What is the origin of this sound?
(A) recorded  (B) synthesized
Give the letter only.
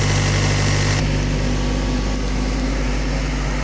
A